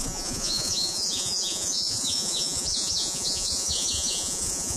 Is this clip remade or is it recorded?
remade